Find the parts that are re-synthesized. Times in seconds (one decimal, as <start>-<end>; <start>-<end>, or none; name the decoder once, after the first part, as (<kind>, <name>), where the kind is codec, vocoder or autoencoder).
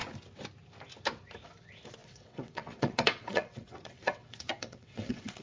2.0-5.4 (vocoder, WaveNeXt)